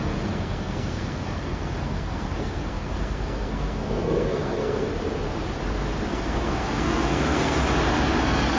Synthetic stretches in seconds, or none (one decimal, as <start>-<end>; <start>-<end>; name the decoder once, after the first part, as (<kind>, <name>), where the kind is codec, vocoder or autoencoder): 0.0-4.9 (codec, SNAC); 6.1-7.6; 8.2-8.6